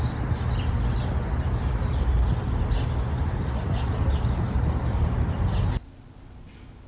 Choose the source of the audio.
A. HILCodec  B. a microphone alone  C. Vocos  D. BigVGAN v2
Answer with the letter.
B